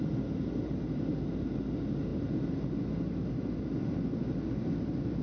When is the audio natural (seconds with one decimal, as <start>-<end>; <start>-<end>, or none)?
0.0-5.2